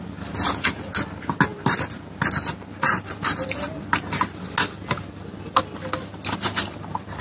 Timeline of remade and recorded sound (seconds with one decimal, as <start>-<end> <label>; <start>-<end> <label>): 0.0-7.2 recorded